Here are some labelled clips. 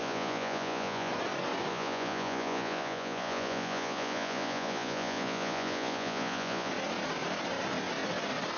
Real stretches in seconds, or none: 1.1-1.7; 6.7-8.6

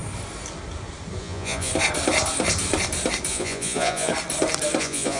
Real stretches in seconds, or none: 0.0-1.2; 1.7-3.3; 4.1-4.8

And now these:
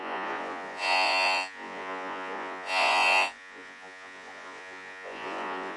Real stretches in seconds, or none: none

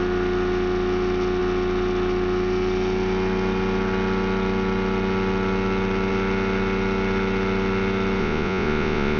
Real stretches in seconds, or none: 0.0-8.2

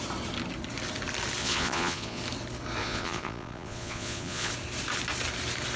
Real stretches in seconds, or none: 0.0-1.4; 2.2-2.8; 4.5-5.8

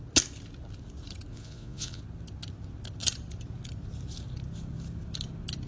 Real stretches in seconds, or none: 0.0-1.3; 2.0-5.7

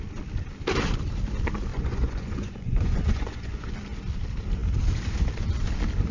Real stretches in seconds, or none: 0.0-1.7; 3.7-6.1